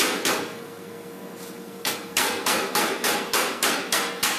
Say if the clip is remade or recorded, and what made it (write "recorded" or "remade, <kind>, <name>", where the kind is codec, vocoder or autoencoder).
remade, codec, SNAC